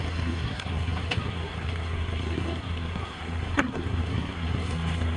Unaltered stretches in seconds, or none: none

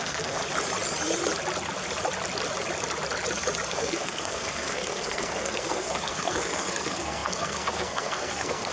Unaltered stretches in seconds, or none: 0.4-3.7

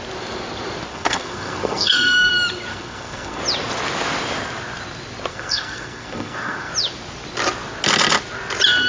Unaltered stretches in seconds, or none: 0.0-0.9; 2.3-2.7; 3.4-5.3; 6.7-8.9

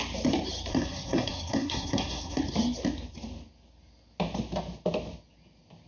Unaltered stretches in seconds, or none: 0.0-0.7; 2.4-5.9

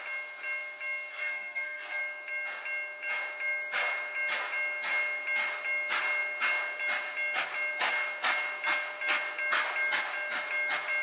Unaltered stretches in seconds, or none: 0.0-1.1; 2.0-11.0